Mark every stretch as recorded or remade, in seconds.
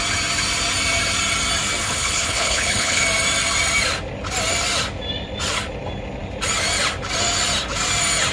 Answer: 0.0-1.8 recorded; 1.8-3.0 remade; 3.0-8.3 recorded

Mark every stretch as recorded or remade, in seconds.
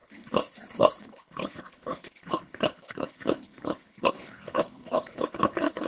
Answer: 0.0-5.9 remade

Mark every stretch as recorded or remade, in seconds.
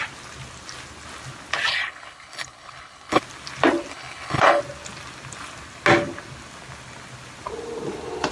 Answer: 0.0-1.7 recorded; 1.7-3.2 remade; 3.2-3.9 recorded; 3.9-4.6 remade; 4.6-8.3 recorded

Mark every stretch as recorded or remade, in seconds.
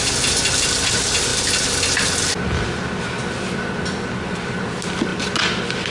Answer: 0.0-5.9 recorded